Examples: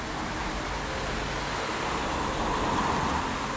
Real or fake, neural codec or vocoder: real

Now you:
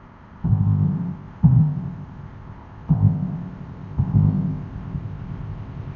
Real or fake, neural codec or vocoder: fake, codec, ZipCodec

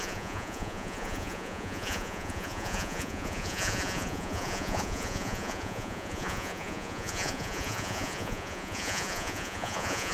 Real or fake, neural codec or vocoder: fake, vocoder, Vocos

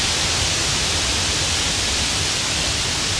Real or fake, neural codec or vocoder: real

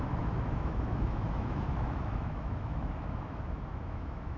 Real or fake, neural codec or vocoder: fake, autoencoder, DAC-VAE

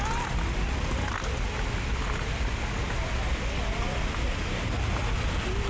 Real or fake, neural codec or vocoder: real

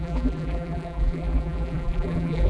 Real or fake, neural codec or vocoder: fake, vocoder, BigVGAN v2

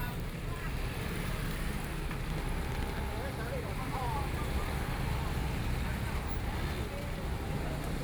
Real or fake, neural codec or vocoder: real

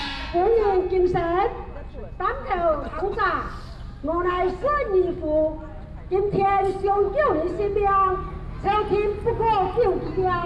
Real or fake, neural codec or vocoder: real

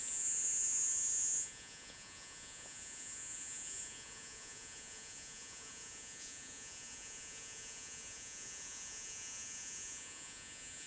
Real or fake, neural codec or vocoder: fake, vocoder, Vocos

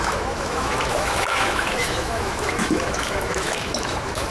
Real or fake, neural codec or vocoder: fake, autoencoder, DAC-VAE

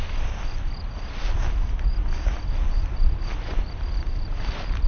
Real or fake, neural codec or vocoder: real